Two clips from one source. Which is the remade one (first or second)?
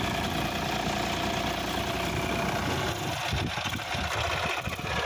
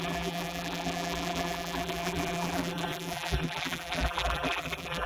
second